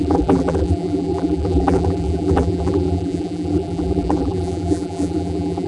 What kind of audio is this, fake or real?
fake